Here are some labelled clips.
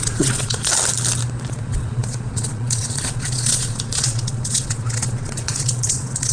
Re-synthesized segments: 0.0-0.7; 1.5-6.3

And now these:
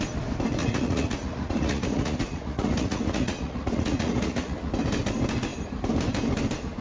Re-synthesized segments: 0.6-4.7

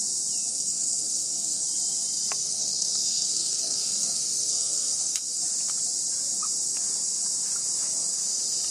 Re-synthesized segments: 0.5-1.6; 2.4-5.4

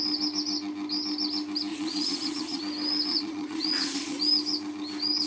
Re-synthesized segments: 1.7-2.6; 3.1-4.2

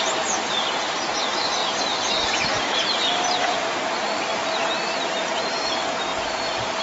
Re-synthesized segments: 4.3-5.3

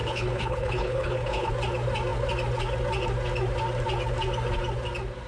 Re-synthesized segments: 0.0-1.5